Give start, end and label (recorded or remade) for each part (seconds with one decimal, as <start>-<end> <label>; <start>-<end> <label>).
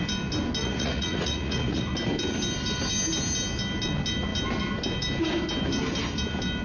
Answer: 0.0-0.6 recorded; 0.6-1.9 remade; 1.9-6.6 recorded